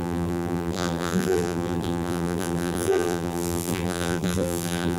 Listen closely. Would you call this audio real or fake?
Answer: fake